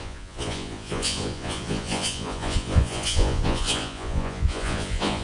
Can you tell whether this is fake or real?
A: fake